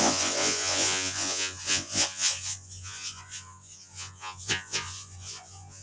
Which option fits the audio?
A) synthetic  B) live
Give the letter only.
A